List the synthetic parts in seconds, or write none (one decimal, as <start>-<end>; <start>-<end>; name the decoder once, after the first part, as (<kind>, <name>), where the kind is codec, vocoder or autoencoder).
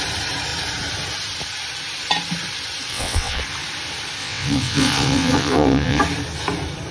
2.9-3.4 (vocoder, WaveNeXt); 4.2-6.0